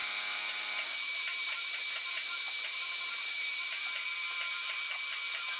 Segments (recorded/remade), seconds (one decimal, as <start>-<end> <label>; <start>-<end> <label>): 0.0-5.6 remade